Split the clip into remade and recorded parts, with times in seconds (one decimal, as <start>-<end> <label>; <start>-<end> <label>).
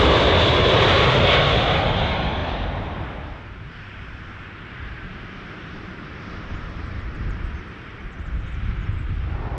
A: 0.0-9.6 remade